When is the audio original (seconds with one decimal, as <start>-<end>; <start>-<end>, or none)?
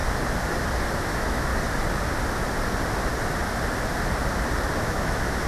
0.0-0.9; 1.5-4.8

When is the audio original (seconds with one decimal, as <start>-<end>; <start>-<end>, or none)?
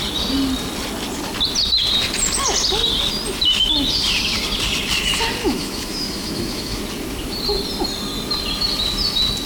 0.0-5.4; 6.8-9.5